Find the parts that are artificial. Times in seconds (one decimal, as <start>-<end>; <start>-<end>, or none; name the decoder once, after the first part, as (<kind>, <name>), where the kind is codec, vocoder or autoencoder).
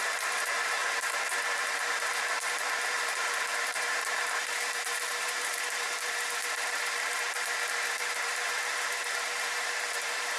0.0-10.4 (vocoder, BigVGAN v2)